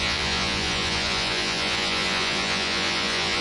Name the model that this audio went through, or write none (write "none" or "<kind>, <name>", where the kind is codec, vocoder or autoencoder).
vocoder, Vocos